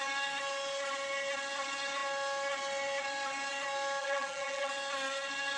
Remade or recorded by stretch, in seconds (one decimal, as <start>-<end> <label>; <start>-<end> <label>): 0.0-4.0 recorded; 4.0-4.7 remade; 4.7-5.6 recorded